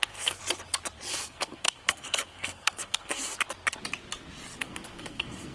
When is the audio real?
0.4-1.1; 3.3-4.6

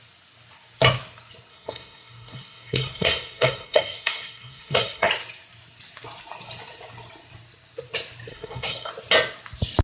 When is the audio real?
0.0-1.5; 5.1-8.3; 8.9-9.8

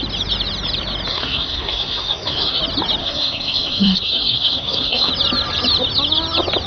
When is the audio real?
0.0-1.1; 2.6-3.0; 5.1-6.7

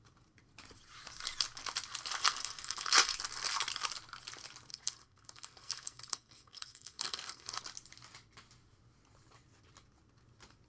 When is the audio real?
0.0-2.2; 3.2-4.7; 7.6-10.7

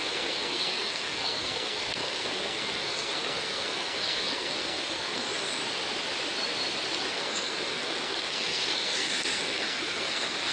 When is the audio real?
5.6-7.1

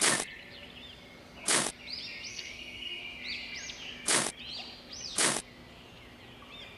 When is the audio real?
0.0-2.3; 3.0-6.8

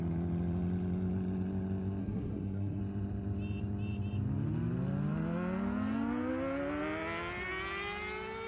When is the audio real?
0.0-2.0; 2.8-8.5

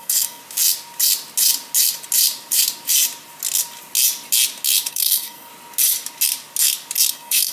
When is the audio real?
0.4-4.9; 5.5-7.1